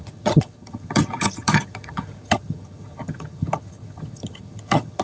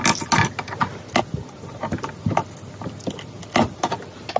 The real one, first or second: second